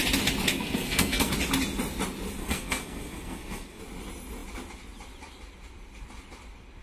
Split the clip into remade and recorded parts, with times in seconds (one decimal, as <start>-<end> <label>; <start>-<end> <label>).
0.0-0.5 recorded; 0.5-1.3 remade; 1.3-2.4 recorded; 2.4-3.8 remade; 3.8-6.8 recorded